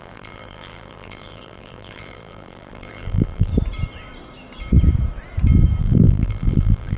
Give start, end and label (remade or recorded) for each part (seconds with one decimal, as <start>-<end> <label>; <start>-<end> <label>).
0.0-3.5 remade; 3.5-5.8 recorded; 5.8-7.0 remade